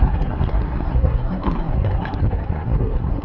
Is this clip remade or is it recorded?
remade